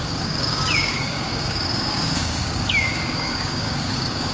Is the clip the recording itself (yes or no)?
no